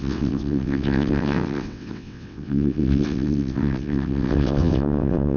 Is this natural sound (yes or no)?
no